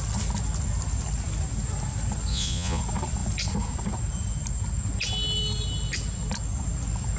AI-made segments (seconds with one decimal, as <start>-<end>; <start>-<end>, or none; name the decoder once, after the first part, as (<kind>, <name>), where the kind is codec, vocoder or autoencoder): 2.3-2.8 (vocoder, Vocos)